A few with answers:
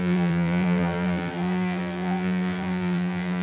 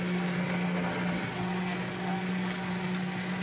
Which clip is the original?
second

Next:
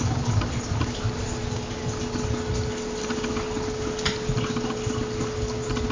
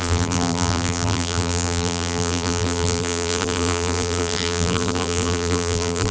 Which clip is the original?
first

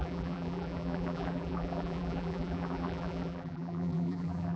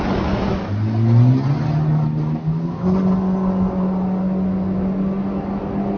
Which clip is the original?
second